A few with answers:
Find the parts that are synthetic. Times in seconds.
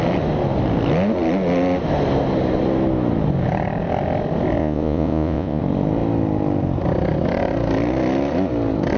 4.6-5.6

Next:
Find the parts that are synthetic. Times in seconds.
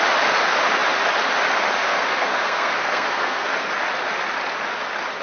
1.8-3.7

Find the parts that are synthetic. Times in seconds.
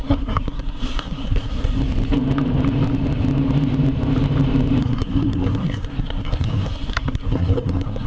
0.0-1.8; 4.8-8.1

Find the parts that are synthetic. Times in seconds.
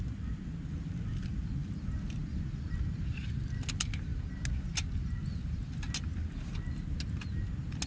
none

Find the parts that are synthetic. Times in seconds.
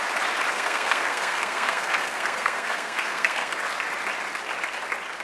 0.5-3.6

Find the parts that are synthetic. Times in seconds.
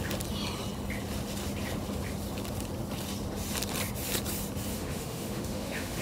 4.7-6.0